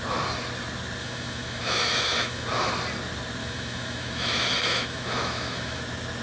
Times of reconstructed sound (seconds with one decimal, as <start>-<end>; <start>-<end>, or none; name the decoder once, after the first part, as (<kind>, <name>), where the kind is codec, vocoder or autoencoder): 1.0-2.7 (autoencoder, DAC-VAE); 3.4-5.8